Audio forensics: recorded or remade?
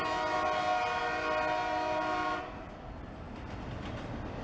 recorded